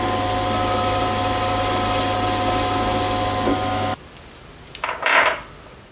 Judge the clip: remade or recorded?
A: recorded